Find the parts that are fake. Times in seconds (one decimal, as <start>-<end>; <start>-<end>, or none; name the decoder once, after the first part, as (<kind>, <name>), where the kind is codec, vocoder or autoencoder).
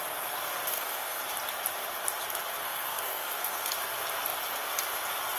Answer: 0.7-1.2 (codec, SNAC); 2.6-3.7